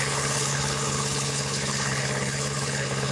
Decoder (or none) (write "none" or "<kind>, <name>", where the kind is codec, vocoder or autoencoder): codec, HILCodec